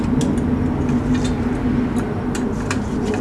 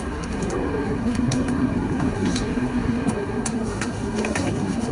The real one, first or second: first